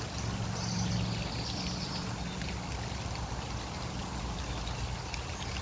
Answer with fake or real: real